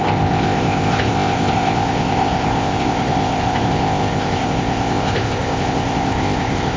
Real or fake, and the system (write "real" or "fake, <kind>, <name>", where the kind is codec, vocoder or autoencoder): fake, codec, ZipCodec